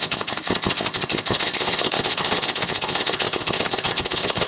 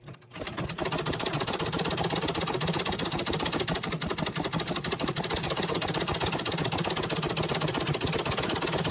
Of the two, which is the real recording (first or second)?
second